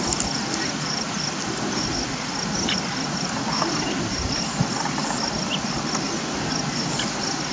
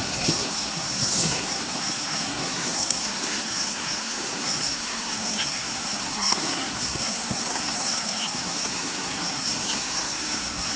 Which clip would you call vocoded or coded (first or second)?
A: second